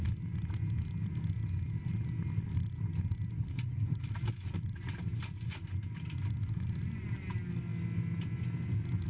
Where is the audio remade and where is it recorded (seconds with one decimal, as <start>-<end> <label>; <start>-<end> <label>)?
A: 0.0-9.1 recorded